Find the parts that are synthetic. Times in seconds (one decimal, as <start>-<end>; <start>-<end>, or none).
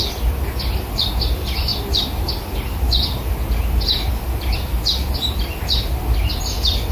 none